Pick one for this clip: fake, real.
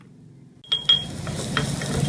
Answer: real